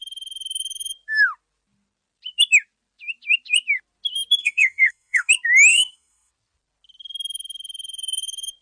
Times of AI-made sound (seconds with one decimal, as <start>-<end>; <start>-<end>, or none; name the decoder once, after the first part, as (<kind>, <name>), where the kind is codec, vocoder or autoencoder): 4.4-5.3 (codec, SNAC); 5.7-6.3